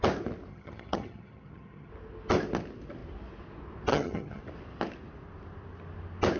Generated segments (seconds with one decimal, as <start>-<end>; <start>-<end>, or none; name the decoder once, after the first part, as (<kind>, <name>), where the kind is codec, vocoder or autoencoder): 0.5-1.9 (vocoder, HiFi-GAN); 3.9-4.4

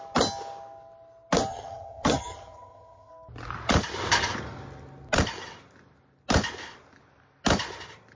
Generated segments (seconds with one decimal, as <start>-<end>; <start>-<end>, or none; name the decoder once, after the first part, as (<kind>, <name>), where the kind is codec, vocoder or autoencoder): 1.5-3.1 (vocoder, HiFi-GAN)

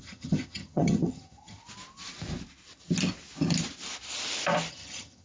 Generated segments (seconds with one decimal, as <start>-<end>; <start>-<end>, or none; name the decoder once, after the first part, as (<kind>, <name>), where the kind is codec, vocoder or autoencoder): 0.0-1.6 (vocoder, HiFi-GAN); 4.7-5.2

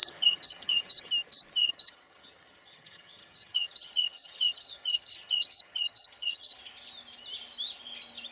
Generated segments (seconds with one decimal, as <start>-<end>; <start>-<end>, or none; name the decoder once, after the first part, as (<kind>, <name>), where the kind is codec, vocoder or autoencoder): 0.0-1.1 (vocoder, HiFi-GAN); 1.6-6.6

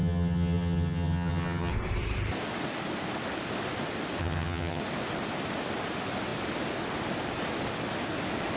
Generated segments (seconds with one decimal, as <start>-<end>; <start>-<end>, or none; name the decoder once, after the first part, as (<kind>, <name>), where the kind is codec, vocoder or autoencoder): 0.0-1.7 (vocoder, HiFi-GAN); 4.2-4.8

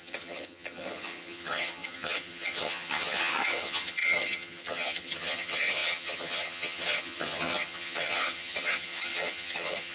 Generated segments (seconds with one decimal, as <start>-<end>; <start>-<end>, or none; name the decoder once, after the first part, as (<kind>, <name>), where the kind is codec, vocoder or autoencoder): 0.0-9.9 (vocoder, HiFi-GAN)

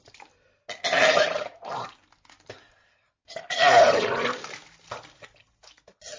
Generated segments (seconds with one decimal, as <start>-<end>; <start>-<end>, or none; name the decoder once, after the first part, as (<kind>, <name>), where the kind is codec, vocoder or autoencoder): none

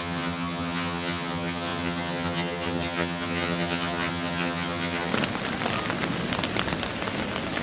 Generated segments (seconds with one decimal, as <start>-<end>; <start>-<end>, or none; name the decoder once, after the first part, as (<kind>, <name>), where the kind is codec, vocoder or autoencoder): 0.0-5.1 (vocoder, HiFi-GAN)